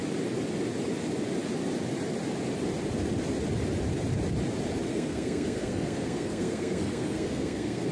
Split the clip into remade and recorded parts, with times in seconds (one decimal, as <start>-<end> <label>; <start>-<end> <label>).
0.0-4.9 recorded; 4.9-7.9 remade

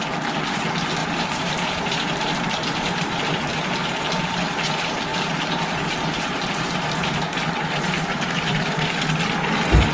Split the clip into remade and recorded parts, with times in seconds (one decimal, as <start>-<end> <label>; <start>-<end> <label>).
0.0-1.0 recorded; 1.0-3.7 remade; 3.7-5.1 recorded; 5.1-9.0 remade; 9.0-9.9 recorded